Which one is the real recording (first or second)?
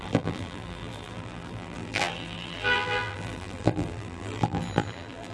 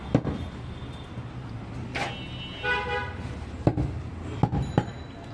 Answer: second